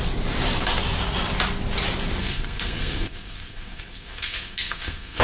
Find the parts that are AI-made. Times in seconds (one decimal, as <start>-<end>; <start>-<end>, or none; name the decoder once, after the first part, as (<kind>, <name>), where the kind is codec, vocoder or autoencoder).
2.2-5.2 (codec, SNAC)